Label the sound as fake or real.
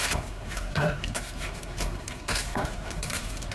fake